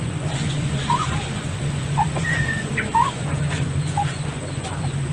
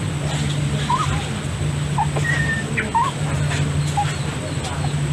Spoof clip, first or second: first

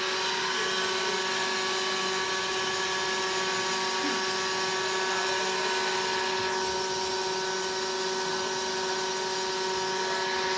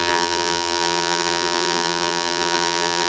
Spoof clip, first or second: second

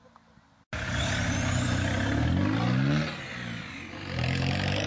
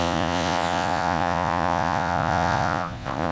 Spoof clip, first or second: second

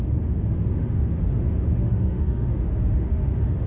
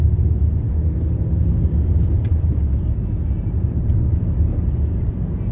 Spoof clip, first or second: first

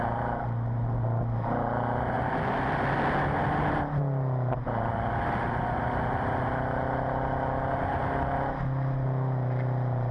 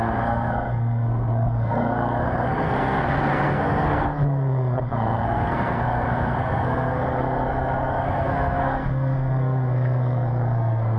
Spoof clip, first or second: second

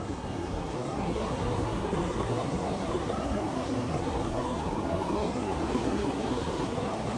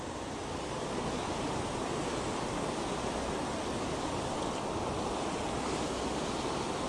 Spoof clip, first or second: first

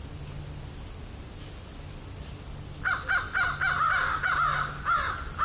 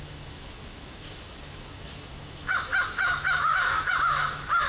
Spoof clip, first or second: second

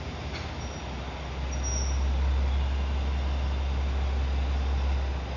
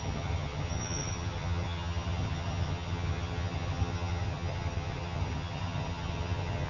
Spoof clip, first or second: second